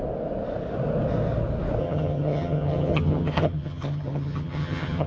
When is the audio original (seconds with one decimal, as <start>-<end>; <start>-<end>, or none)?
0.0-1.8